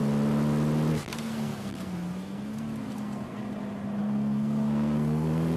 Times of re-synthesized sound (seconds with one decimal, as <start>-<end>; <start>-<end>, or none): 0.9-3.4; 4.0-5.6